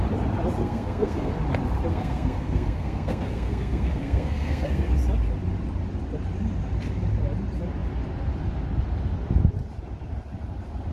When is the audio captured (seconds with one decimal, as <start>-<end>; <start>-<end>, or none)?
0.0-0.6; 1.3-1.9; 4.9-10.9